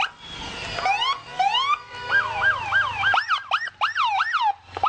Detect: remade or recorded recorded